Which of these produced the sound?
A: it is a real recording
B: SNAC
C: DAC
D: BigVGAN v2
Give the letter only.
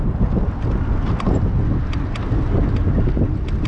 A